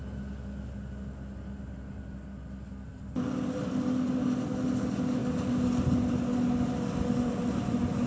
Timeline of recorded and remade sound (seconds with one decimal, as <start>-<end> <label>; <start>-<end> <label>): 0.0-8.1 recorded